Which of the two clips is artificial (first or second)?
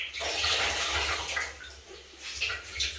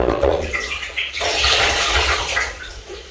second